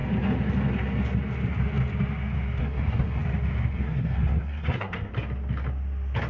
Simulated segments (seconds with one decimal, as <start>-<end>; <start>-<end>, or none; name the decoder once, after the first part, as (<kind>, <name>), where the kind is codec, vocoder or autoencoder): 2.6-3.2 (codec, SNAC); 3.7-5.1